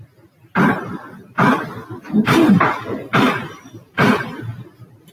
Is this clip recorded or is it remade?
recorded